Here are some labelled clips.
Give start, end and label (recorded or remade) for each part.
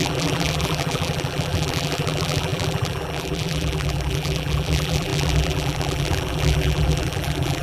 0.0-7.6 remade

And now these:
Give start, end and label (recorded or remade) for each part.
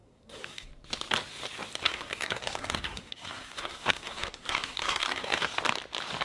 0.0-0.7 remade; 0.7-1.8 recorded; 1.8-5.5 remade; 5.5-6.2 recorded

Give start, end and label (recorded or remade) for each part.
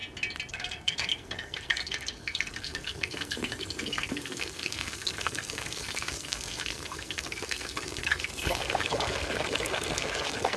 0.0-0.5 recorded; 0.5-10.6 remade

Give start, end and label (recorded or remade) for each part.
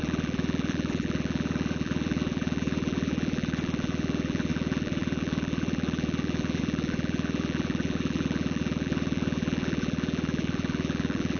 0.0-11.4 remade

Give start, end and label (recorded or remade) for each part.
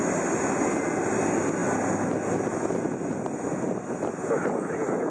0.0-5.1 recorded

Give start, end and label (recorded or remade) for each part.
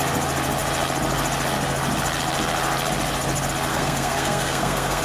0.0-3.7 recorded; 3.7-5.0 remade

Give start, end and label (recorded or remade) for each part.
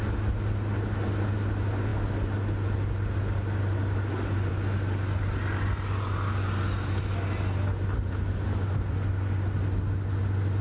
0.0-10.6 recorded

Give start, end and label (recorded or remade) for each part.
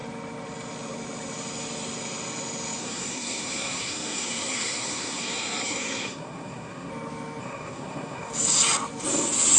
0.0-2.8 recorded; 2.8-6.9 remade; 6.9-7.4 recorded; 7.4-8.3 remade; 8.3-9.6 recorded